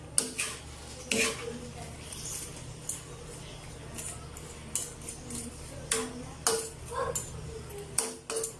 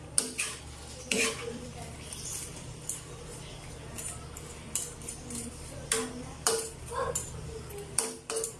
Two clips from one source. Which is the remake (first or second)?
second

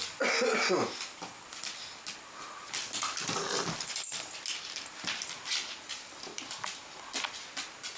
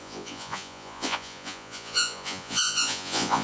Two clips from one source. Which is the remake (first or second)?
second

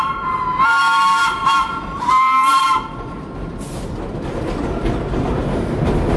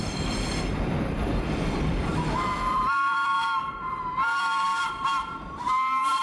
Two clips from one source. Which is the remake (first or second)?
second